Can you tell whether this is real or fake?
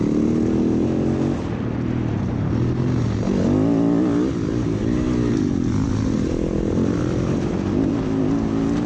real